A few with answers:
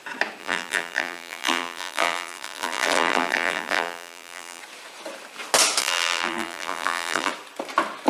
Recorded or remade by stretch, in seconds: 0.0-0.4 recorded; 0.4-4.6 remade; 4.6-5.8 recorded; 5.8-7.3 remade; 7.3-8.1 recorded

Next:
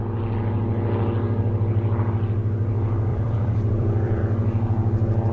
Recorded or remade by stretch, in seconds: 0.0-3.1 recorded; 3.1-4.2 remade; 4.2-5.3 recorded